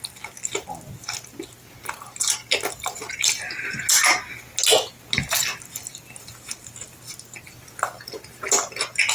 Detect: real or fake real